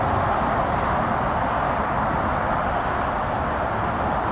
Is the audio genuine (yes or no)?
yes